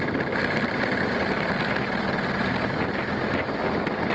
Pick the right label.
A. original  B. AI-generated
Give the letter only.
A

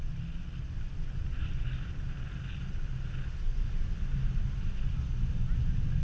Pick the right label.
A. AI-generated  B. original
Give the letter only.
B